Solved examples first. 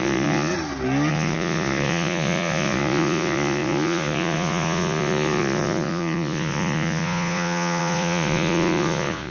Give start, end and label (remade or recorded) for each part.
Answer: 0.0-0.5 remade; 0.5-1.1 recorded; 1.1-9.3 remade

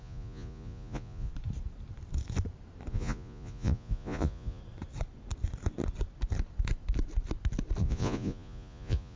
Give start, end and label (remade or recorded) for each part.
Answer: 0.0-1.3 remade; 1.3-2.9 recorded; 2.9-4.6 remade; 4.6-7.8 recorded; 7.8-9.2 remade